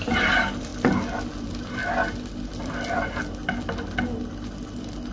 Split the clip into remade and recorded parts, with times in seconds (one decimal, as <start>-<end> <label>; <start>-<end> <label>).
0.0-0.7 remade; 0.7-1.4 recorded; 1.4-1.8 remade; 1.8-5.1 recorded